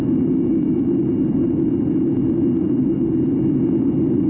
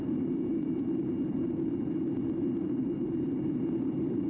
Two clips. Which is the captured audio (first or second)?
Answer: first